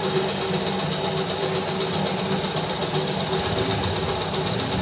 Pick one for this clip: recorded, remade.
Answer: recorded